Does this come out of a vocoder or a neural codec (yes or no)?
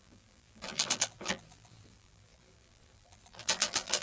yes